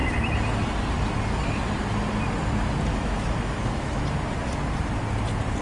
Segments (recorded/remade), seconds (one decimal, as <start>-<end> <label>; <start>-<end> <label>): 0.0-2.9 recorded; 2.9-4.0 remade; 4.0-5.6 recorded